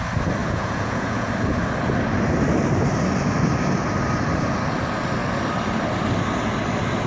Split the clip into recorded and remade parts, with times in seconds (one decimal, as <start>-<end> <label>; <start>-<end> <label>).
0.0-0.4 recorded; 0.4-1.3 remade; 1.3-7.1 recorded